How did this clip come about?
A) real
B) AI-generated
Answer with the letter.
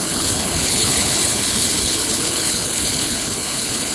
B